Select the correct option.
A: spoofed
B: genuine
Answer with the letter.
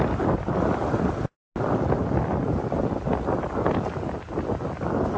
B